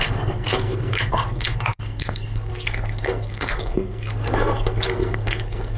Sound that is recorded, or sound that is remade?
remade